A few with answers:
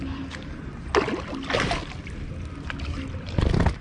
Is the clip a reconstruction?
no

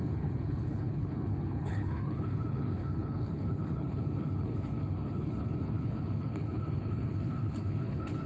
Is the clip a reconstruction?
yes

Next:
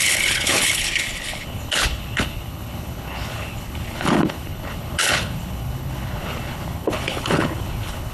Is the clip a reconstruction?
yes